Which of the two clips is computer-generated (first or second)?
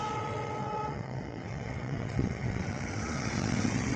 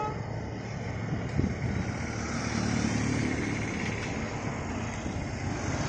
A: first